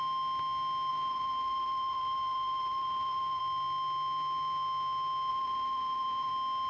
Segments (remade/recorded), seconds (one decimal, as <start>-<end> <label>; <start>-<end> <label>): 0.0-0.9 recorded; 0.9-3.4 remade; 3.4-5.3 recorded; 5.3-6.3 remade; 6.3-6.7 recorded